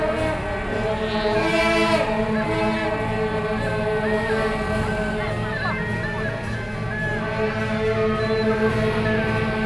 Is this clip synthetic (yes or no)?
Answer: no